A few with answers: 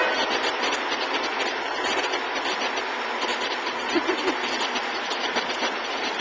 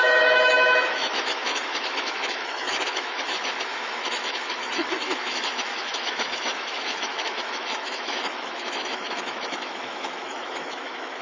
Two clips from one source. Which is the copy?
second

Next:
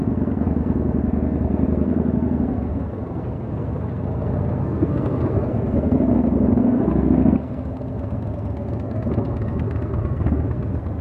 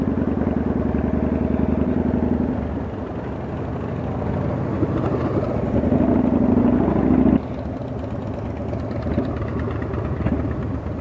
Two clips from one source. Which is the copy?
first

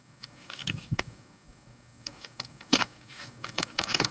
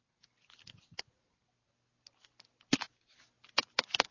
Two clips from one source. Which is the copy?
first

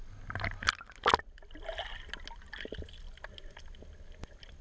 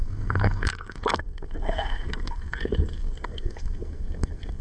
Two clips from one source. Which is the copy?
second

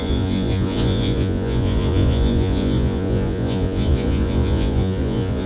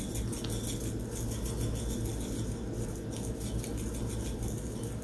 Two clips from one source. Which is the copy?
first